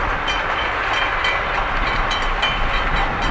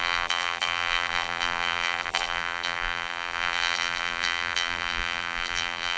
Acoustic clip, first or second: first